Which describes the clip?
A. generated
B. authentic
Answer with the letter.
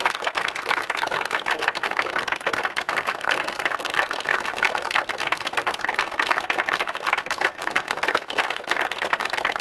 A